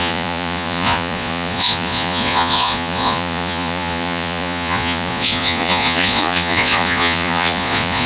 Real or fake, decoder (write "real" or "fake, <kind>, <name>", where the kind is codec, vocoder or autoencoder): fake, vocoder, Vocos